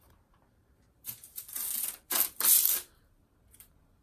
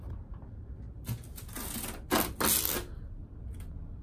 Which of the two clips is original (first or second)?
second